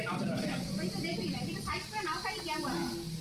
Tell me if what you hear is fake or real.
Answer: real